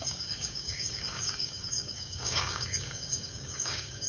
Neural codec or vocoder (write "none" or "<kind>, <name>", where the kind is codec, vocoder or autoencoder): codec, DAC